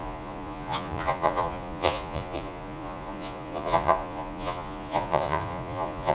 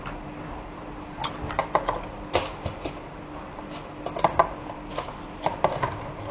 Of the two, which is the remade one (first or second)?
first